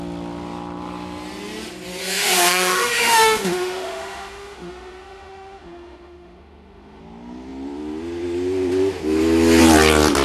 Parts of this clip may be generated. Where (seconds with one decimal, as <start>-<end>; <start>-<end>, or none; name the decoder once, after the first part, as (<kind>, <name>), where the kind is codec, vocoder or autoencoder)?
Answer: 2.0-7.0 (autoencoder, DAC-VAE)